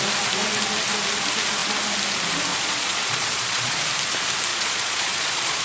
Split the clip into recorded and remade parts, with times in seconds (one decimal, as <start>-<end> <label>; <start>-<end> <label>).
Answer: 0.0-2.5 recorded; 2.5-3.9 remade; 3.9-4.5 recorded; 4.5-5.6 remade